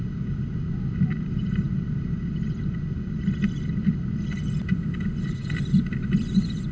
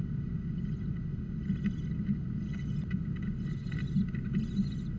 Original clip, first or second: second